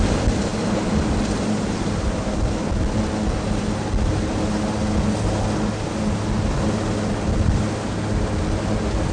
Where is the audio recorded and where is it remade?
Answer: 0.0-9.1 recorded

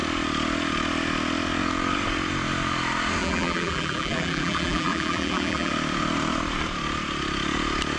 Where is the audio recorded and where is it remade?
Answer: 0.0-3.2 recorded; 3.2-5.7 remade; 5.7-8.0 recorded

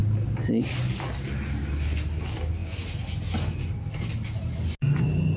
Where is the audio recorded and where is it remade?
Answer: 0.0-5.4 recorded

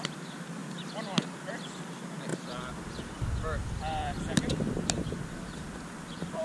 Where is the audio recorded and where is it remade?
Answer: 0.0-0.6 recorded; 0.6-1.5 remade; 1.5-3.6 recorded; 3.6-6.4 remade

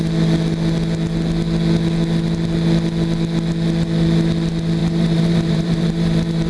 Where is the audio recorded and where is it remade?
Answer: 0.0-4.8 recorded; 4.8-6.5 remade

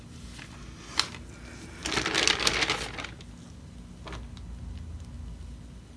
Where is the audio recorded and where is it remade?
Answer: 0.0-6.0 recorded

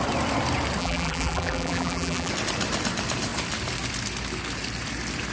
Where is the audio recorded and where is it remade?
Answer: 0.0-0.8 recorded; 0.8-2.3 remade; 2.3-5.3 recorded